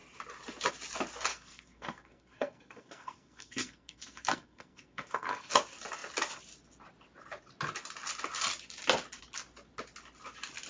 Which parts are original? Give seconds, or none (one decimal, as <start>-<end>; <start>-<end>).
0.0-1.3; 5.5-10.7